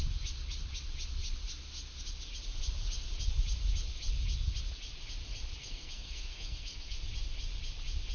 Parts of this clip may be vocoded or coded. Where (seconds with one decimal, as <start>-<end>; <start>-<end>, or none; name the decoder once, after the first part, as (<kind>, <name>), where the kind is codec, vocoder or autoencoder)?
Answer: 5.6-7.0 (codec, SNAC)